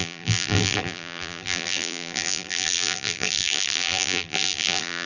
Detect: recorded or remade remade